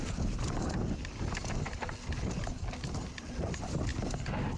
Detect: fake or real real